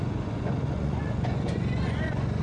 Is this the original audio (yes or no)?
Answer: no